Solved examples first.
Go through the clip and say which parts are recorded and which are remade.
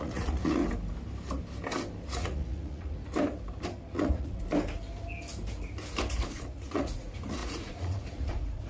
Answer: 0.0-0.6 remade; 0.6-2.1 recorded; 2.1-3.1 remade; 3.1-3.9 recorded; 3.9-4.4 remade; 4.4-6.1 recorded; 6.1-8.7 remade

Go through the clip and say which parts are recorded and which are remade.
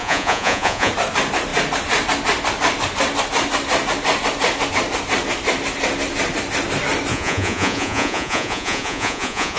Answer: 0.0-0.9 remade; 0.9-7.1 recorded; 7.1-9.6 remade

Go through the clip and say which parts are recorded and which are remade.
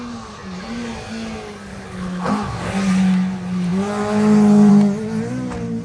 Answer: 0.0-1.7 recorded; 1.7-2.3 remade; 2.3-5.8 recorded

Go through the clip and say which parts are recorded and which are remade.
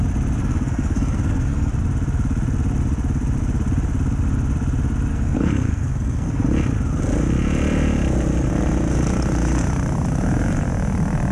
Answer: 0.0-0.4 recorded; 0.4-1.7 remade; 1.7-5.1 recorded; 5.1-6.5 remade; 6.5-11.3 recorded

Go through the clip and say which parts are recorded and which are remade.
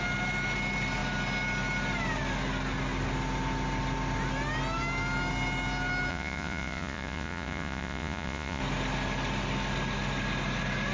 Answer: 0.0-6.1 recorded; 6.1-8.6 remade; 8.6-10.9 recorded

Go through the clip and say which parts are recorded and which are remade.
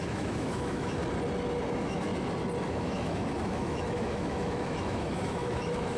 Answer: 0.0-1.0 remade; 1.0-1.7 recorded; 1.7-2.1 remade; 2.1-2.7 recorded; 2.7-6.0 remade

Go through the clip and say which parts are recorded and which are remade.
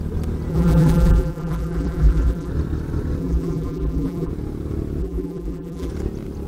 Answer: 0.0-0.5 recorded; 0.5-2.5 remade; 2.5-3.2 recorded; 3.2-4.3 remade; 4.3-5.0 recorded; 5.0-5.9 remade; 5.9-6.5 recorded